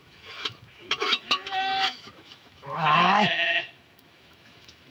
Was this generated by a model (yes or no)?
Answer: yes